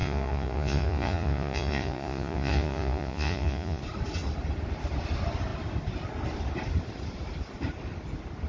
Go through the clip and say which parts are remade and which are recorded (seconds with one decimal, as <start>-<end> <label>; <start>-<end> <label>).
0.0-3.8 remade; 3.8-8.5 recorded